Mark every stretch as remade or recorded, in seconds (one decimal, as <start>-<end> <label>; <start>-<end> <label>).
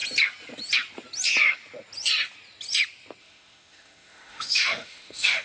0.0-3.2 recorded; 3.2-5.4 remade